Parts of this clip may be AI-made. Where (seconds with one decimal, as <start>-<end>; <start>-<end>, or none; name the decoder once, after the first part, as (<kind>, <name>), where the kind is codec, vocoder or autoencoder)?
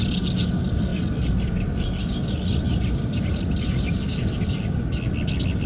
none